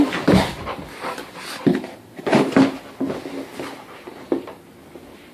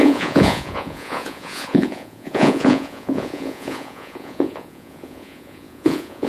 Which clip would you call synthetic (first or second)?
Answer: second